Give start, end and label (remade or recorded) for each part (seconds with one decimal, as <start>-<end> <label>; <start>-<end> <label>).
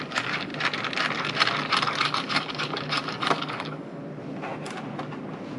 0.0-0.5 remade; 0.5-2.0 recorded; 2.0-4.0 remade; 4.0-5.6 recorded